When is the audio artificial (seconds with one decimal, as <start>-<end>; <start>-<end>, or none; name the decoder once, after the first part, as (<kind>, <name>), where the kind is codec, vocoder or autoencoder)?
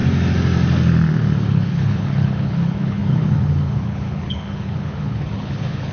1.5-5.9 (codec, HILCodec)